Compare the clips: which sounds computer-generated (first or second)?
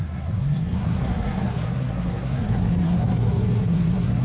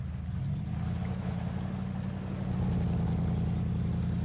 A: first